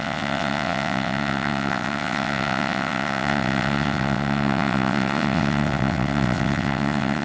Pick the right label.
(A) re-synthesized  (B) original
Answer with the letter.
A